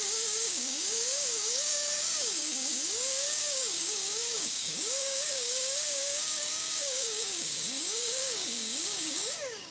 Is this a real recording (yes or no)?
no